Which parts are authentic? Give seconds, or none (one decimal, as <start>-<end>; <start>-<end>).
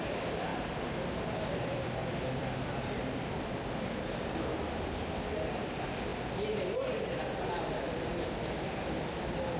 0.0-9.6